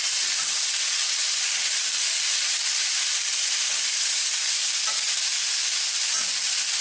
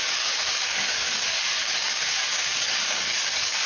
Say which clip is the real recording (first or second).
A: first